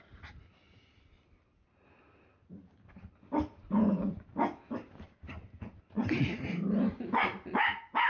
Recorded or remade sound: recorded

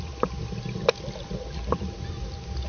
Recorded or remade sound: recorded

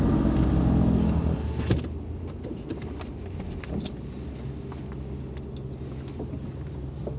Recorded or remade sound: recorded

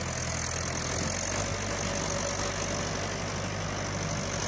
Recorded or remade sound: recorded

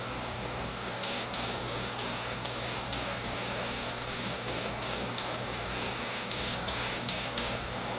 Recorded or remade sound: remade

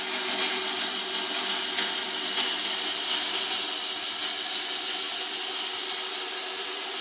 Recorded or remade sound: recorded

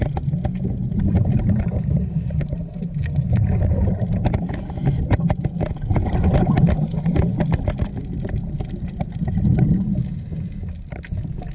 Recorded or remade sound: recorded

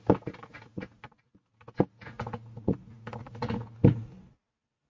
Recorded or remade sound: recorded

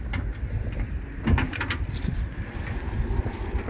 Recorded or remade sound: recorded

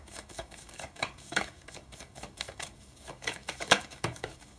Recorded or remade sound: remade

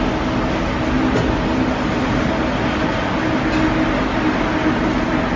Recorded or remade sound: recorded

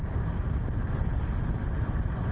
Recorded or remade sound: recorded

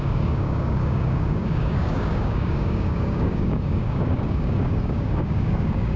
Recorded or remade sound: remade